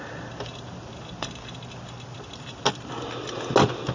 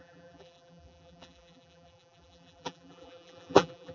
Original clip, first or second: first